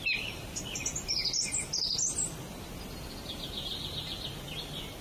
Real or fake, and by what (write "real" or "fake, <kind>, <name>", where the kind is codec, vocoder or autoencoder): real